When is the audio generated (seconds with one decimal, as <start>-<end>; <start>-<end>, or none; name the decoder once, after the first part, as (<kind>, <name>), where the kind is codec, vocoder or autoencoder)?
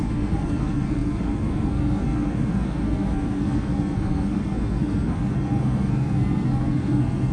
0.0-7.3 (codec, SNAC)